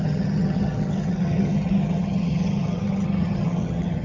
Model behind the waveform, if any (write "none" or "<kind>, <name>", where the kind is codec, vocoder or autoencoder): vocoder, HiFi-GAN